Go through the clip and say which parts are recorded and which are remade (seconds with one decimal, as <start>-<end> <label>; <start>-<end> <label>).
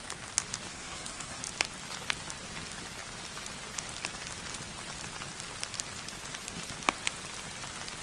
0.0-0.7 recorded; 0.7-1.4 remade; 1.4-8.0 recorded